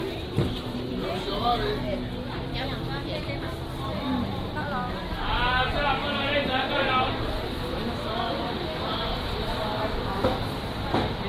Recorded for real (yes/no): yes